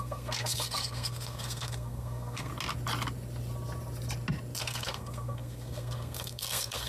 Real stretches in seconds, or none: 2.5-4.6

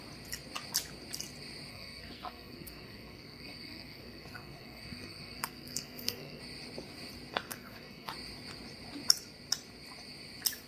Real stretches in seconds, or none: 0.0-1.7; 6.4-7.3; 8.1-10.7

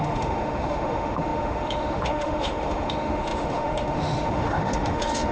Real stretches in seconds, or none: none

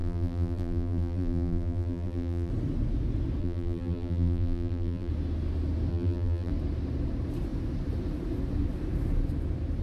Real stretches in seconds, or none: 2.5-3.4; 5.1-5.9; 6.5-9.8

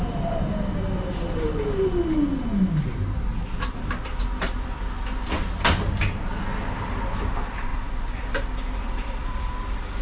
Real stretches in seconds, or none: 0.0-3.3; 5.6-7.7

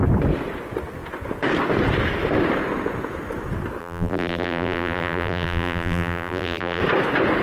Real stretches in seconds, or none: 0.0-3.8; 6.8-7.4

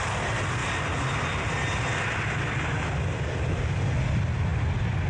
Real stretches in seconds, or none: 0.0-5.1